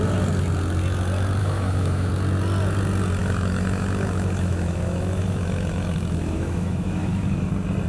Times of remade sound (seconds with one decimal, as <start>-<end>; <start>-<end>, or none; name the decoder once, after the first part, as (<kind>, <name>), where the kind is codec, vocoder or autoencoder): 1.4-2.1 (autoencoder, DAC-VAE); 3.2-7.5